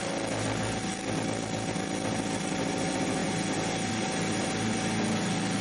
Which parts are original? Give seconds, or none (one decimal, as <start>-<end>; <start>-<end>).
0.0-5.6